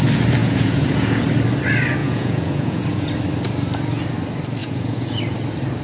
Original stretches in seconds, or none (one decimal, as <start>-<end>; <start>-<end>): 0.0-0.4; 1.2-2.0; 3.1-4.6; 5.2-5.8